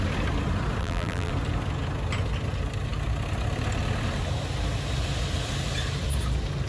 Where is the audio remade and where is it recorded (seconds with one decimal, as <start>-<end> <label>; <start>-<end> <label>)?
0.0-0.8 recorded; 0.8-1.3 remade; 1.3-6.7 recorded